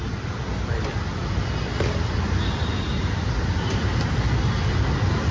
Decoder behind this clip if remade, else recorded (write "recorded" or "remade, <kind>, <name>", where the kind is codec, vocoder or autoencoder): recorded